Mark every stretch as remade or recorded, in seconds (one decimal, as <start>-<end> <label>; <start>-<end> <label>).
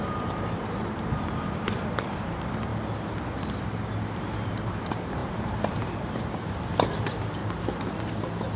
0.0-2.7 remade; 2.7-4.2 recorded; 4.2-7.4 remade; 7.4-8.6 recorded